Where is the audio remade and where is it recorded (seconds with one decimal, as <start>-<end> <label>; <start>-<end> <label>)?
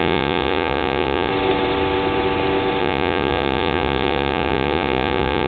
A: 0.0-1.3 remade; 1.3-2.8 recorded; 2.8-5.5 remade